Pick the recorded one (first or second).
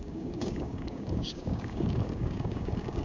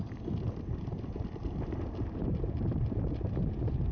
second